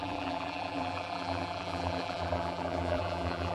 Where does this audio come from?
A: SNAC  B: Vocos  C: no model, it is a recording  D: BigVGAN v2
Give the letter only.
D